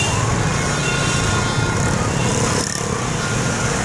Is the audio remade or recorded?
recorded